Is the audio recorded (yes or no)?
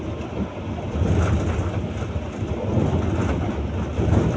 yes